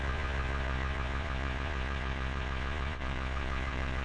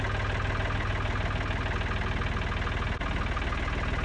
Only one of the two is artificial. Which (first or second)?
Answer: first